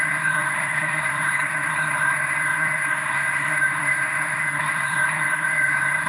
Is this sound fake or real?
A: fake